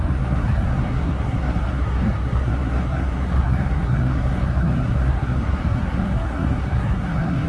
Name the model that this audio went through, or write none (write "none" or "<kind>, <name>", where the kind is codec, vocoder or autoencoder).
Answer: codec, SNAC